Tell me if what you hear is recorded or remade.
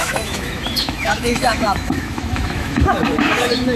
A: remade